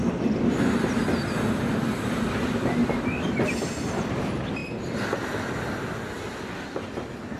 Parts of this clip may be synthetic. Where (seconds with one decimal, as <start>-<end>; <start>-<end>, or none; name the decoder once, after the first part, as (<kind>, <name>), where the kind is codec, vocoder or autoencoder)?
0.0-1.0 (vocoder, BigVGAN v2); 1.9-2.8; 4.0-4.6; 6.0-7.4